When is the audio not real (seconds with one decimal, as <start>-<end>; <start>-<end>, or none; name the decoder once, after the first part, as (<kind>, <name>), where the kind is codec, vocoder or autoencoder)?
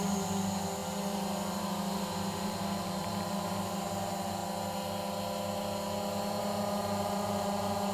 0.0-4.4 (vocoder, BigVGAN v2); 6.4-7.9